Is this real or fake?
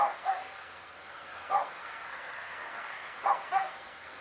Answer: fake